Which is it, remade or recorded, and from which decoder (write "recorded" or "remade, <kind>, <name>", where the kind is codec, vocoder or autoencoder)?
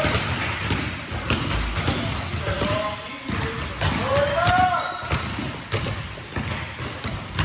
recorded